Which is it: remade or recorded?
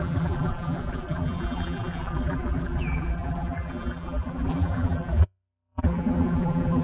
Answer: remade